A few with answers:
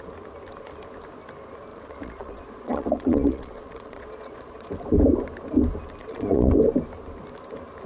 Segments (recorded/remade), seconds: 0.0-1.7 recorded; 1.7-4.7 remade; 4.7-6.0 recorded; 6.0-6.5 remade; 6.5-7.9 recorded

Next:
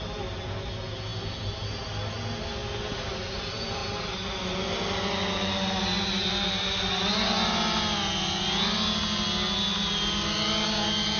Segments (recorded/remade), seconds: 0.0-11.2 recorded

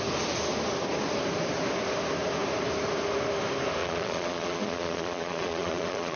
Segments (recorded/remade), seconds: 0.0-3.8 recorded; 3.8-6.2 remade

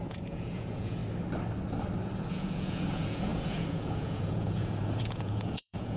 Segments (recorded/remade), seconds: 0.0-1.0 remade; 1.0-2.3 recorded; 2.3-6.0 remade

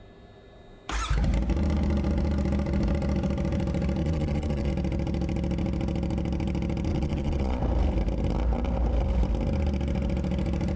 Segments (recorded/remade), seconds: 0.0-4.0 recorded; 4.0-4.7 remade; 4.7-6.9 recorded; 6.9-7.6 remade; 7.6-10.8 recorded

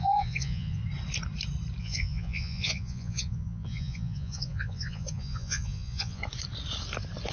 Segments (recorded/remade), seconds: 0.0-0.8 remade; 0.8-1.8 recorded; 1.8-6.2 remade; 6.2-7.3 recorded

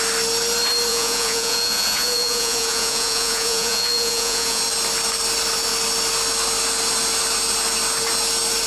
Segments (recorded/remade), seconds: 0.0-0.9 recorded; 0.9-4.6 remade; 4.6-8.7 recorded